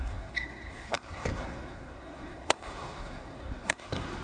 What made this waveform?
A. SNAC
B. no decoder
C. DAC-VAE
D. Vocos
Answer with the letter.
A